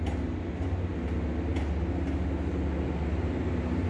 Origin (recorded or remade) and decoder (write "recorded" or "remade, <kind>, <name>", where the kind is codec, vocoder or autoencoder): recorded